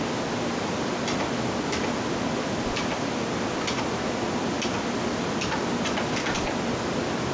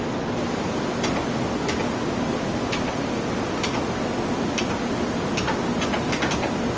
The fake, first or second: first